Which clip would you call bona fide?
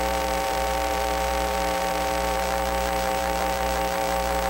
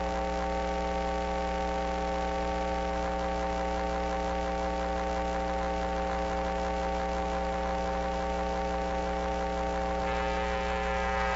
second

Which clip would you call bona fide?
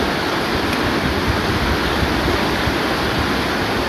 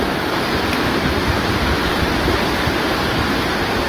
first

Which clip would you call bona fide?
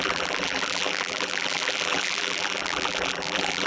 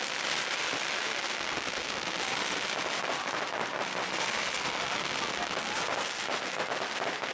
second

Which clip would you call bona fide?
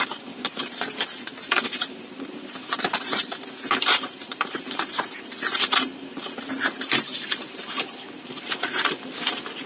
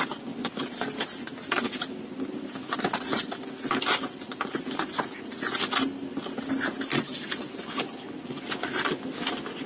second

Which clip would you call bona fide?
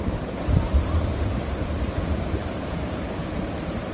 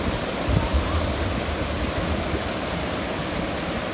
second